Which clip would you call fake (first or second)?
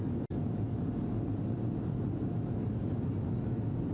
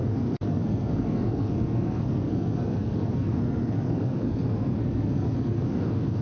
second